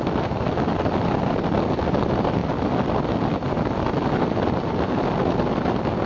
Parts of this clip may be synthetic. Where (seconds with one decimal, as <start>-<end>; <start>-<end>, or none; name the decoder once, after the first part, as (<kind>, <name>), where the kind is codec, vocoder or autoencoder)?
none